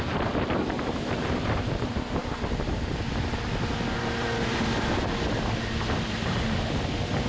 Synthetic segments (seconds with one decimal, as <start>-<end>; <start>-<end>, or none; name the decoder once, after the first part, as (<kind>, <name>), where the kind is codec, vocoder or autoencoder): none